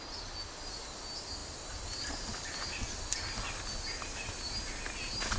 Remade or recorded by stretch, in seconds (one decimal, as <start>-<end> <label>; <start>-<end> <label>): 0.0-5.4 recorded